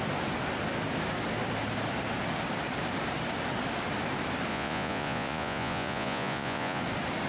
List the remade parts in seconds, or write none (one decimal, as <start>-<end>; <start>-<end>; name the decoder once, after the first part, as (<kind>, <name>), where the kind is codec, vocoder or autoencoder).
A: 4.5-6.8 (vocoder, Vocos)

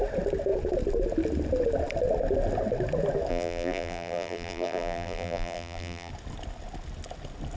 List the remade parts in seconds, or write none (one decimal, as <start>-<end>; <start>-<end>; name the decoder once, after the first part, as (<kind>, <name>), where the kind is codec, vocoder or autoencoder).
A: 3.3-6.1 (vocoder, BigVGAN v2)

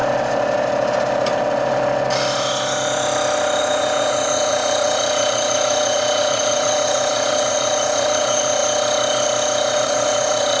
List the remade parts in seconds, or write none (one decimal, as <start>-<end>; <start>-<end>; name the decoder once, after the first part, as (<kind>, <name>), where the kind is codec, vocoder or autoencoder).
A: 3.6-8.6 (vocoder, Vocos); 9.7-10.6

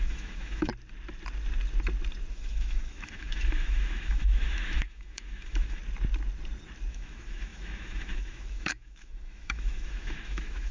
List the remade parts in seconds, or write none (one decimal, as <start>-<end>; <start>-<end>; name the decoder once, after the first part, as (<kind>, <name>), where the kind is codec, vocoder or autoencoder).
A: 0.0-0.7 (autoencoder, DAC-VAE); 2.3-5.8; 6.9-10.7

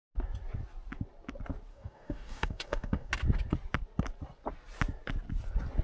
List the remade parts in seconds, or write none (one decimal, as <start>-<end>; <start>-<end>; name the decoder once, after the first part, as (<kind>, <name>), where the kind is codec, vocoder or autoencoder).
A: 1.7-3.1 (codec, DAC)

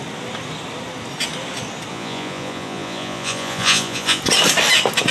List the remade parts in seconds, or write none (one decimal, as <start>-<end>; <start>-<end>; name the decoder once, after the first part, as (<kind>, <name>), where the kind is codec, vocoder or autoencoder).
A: 1.9-4.2 (vocoder, Vocos)